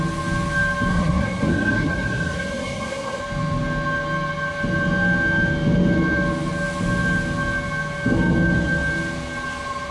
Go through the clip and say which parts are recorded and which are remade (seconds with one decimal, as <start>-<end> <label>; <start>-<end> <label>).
0.0-0.9 recorded; 0.9-3.2 remade; 3.2-9.9 recorded